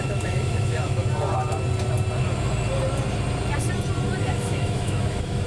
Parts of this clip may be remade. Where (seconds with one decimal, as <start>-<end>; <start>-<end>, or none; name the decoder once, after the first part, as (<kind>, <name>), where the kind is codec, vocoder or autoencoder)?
0.0-1.0 (autoencoder, DAC-VAE); 4.3-5.5